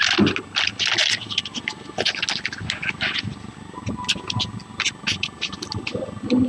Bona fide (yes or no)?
yes